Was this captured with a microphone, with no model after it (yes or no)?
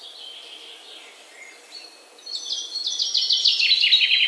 yes